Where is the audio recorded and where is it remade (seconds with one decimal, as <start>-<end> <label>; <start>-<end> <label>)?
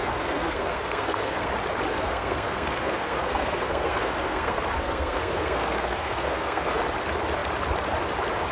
0.0-1.5 remade; 1.5-1.9 recorded; 1.9-6.8 remade; 6.8-8.5 recorded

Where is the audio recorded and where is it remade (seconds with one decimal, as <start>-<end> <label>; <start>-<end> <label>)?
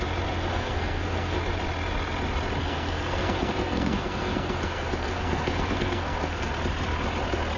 0.0-0.5 recorded; 0.5-1.4 remade; 1.4-2.6 recorded; 2.6-6.5 remade; 6.5-7.6 recorded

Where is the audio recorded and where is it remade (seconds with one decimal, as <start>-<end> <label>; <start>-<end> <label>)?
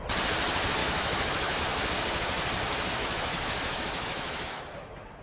0.0-0.8 recorded; 0.8-1.6 remade; 1.6-3.0 recorded; 3.0-4.6 remade; 4.6-5.2 recorded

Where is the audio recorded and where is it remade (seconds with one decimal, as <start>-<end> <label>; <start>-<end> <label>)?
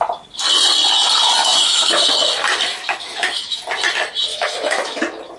0.0-1.4 recorded; 1.4-2.1 remade; 2.1-2.7 recorded; 2.7-3.6 remade; 3.6-4.3 recorded; 4.3-5.0 remade; 5.0-5.4 recorded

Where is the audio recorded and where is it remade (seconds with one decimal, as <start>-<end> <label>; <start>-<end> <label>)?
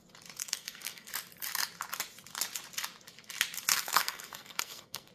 0.0-0.4 recorded; 0.4-1.1 remade; 1.1-3.7 recorded; 3.7-5.1 remade